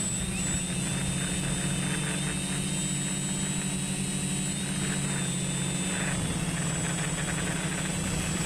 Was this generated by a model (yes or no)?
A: no